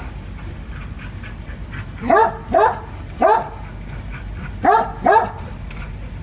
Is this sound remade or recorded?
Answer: recorded